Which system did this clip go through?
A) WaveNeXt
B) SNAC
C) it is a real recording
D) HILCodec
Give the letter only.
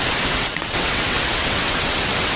A